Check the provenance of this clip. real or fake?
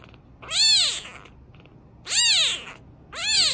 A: real